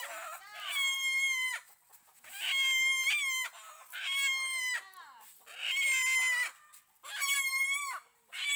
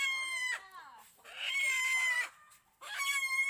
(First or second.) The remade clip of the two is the second